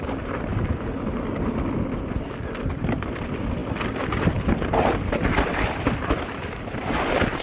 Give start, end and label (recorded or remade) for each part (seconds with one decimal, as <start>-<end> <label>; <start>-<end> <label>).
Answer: 0.0-7.4 recorded